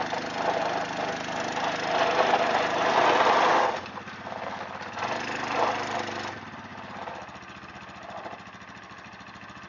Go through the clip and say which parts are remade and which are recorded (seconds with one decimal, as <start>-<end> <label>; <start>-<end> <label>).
0.0-9.7 recorded